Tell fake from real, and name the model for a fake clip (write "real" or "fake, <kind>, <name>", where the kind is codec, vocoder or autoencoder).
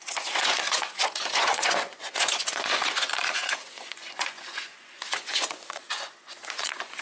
fake, vocoder, Vocos